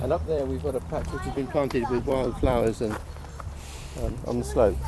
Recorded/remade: remade